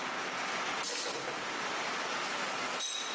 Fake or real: real